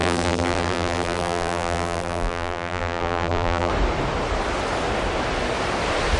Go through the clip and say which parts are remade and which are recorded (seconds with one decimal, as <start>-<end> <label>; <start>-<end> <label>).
0.0-3.7 remade; 3.7-6.2 recorded